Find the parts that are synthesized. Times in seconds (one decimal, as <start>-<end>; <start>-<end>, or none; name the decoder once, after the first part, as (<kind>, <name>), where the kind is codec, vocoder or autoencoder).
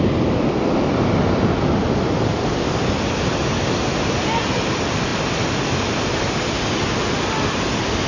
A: none